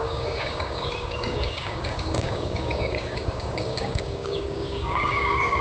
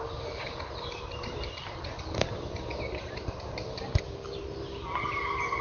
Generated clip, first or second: first